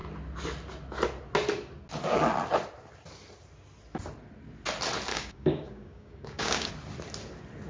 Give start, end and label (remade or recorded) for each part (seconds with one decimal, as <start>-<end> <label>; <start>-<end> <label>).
0.0-5.1 recorded; 5.1-6.7 remade; 6.7-7.7 recorded